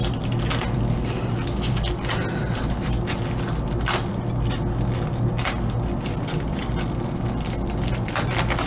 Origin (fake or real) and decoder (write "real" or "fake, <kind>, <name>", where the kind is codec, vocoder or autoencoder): real